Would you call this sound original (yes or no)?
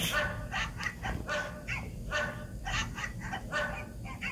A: yes